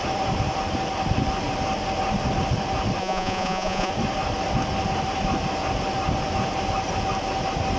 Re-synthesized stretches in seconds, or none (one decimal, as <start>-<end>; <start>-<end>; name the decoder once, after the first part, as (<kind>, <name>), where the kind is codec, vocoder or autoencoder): 3.0-3.9 (vocoder, Vocos)